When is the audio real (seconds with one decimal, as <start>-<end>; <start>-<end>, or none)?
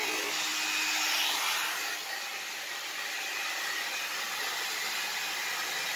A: 0.0-6.0